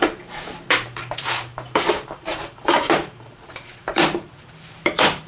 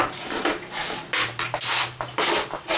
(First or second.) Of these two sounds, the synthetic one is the first